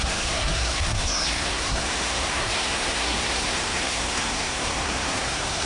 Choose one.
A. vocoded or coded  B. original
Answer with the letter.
A